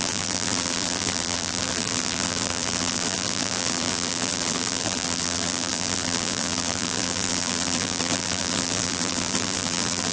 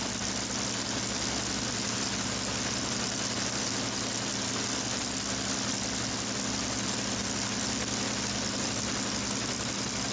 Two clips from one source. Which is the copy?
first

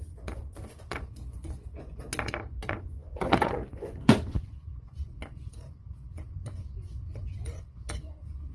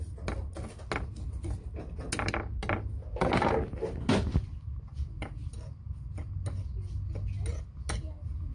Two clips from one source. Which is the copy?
first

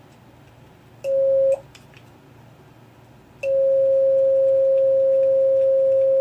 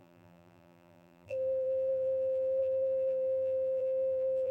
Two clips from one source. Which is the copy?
second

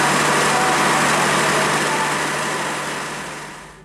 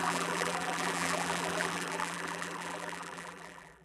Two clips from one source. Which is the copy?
second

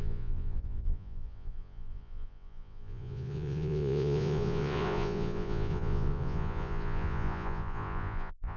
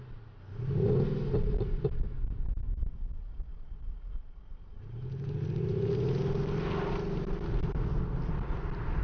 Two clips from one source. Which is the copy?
first